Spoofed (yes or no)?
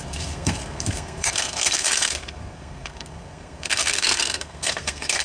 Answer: yes